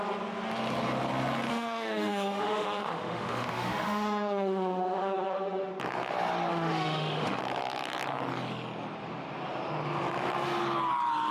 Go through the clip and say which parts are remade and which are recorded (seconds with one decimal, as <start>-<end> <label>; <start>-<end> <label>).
0.0-1.5 recorded; 1.5-5.7 remade; 5.7-6.5 recorded; 6.5-7.4 remade; 7.4-11.3 recorded